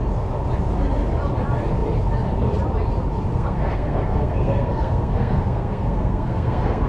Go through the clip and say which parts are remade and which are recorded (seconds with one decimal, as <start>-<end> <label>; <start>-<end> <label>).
0.0-3.3 recorded; 3.3-6.9 remade